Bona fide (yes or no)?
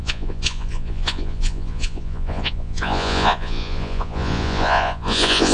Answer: no